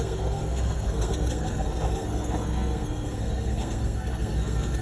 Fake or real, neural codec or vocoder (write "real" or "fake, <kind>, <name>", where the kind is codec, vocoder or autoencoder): fake, codec, SNAC